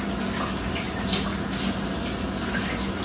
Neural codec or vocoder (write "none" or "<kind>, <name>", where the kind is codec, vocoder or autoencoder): none